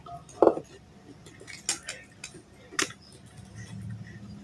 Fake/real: real